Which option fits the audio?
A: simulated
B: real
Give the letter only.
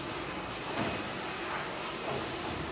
B